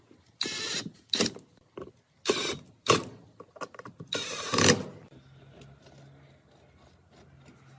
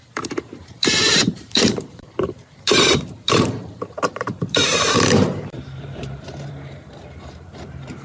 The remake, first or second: second